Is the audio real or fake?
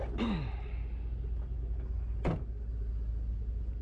real